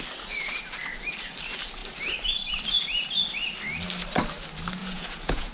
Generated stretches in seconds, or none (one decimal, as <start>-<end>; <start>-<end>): 4.8-5.5